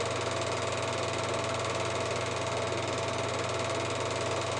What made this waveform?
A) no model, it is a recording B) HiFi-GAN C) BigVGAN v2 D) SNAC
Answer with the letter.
A